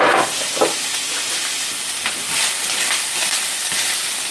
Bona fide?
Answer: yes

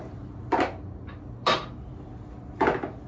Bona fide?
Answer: yes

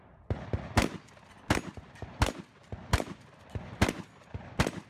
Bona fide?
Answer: yes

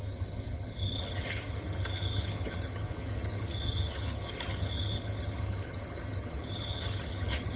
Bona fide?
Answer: no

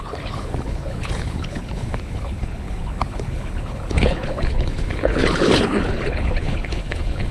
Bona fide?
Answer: no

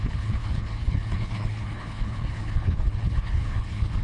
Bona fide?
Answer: no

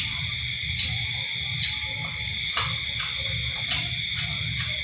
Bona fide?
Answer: yes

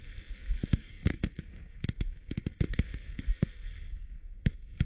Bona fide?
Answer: no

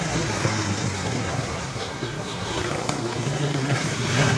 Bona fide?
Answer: no